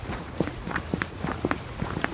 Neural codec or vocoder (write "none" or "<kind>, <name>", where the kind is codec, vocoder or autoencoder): vocoder, Vocos